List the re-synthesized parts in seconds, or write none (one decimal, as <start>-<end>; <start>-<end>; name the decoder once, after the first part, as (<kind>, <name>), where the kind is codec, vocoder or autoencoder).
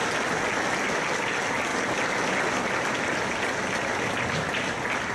none